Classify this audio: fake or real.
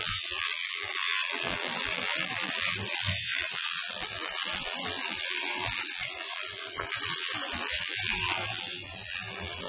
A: fake